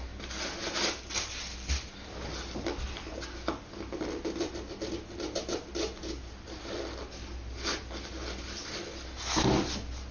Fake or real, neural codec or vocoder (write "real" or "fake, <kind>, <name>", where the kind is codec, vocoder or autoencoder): real